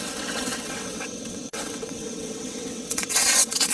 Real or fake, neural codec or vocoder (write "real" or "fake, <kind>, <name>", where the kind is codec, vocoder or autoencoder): fake, vocoder, WaveNeXt